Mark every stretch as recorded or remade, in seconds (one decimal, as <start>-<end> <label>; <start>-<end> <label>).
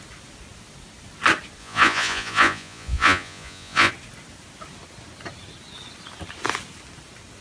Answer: 0.0-1.6 recorded; 1.6-3.9 remade; 3.9-7.4 recorded